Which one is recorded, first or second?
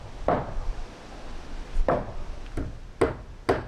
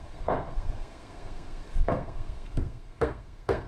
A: first